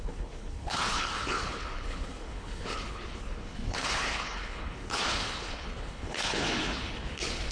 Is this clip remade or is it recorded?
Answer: remade